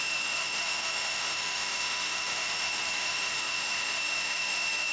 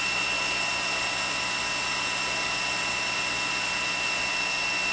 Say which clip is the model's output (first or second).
first